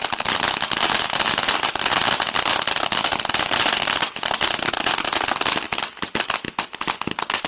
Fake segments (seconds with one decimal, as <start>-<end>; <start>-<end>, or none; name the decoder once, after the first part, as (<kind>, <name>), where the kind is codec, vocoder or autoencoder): none